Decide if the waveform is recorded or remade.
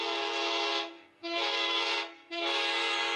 remade